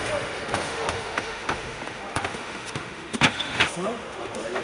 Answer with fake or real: fake